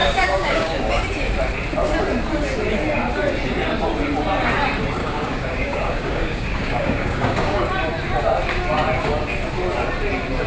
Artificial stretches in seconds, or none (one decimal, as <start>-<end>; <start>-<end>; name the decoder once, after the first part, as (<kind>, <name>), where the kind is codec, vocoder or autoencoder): 0.0-1.0 (codec, DAC); 5.0-7.6

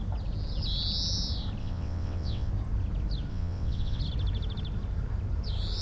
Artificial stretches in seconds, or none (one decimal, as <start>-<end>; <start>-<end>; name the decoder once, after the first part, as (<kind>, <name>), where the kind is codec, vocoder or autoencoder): 1.6-2.5 (vocoder, WaveNeXt); 3.3-4.0

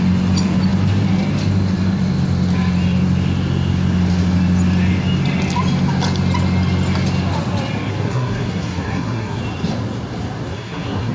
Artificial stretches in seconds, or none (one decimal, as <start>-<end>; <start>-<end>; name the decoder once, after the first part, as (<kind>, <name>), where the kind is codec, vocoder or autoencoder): 7.9-9.4 (codec, SNAC); 10.5-11.1

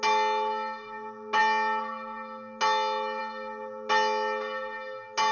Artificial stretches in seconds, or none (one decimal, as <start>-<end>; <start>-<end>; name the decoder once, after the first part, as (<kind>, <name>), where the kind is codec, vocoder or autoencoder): none

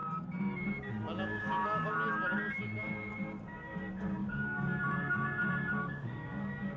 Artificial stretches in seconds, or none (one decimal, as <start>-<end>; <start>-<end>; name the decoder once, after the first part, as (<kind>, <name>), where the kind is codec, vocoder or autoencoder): 4.2-4.8 (codec, DAC); 5.8-6.8

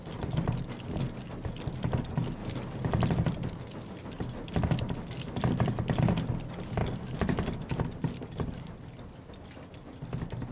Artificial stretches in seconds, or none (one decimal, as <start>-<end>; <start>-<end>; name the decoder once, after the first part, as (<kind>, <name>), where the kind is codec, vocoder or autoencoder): none

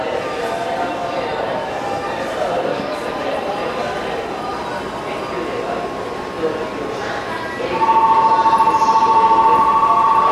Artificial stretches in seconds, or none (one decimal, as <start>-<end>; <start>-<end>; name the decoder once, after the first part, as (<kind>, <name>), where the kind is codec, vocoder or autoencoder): 2.7-3.2 (codec, DAC)

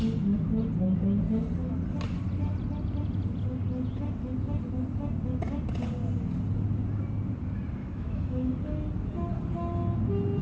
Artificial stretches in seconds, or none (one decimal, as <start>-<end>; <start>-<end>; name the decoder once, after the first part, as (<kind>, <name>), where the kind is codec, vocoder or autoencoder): 7.8-8.5 (autoencoder, DAC-VAE)